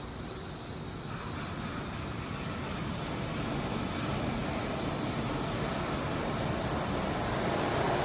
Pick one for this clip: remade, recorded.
recorded